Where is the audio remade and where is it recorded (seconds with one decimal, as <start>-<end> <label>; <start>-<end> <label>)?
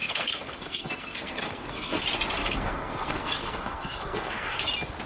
0.0-2.0 remade; 2.0-2.4 recorded; 2.4-4.6 remade; 4.6-5.1 recorded